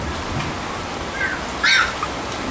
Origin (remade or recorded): recorded